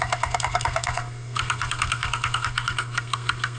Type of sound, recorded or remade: remade